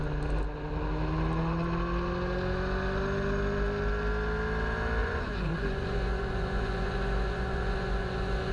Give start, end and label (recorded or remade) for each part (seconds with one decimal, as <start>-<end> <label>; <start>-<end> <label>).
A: 0.0-5.0 recorded; 5.0-8.5 remade